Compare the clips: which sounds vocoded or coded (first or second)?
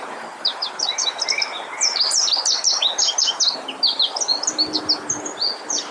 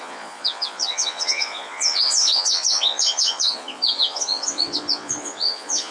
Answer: second